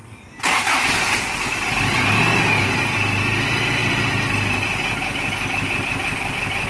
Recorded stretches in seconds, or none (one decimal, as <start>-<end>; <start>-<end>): 0.0-6.7